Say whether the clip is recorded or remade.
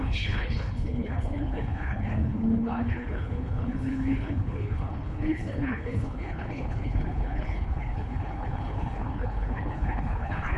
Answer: remade